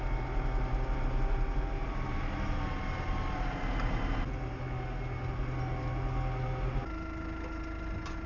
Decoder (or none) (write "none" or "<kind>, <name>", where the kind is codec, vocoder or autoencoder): none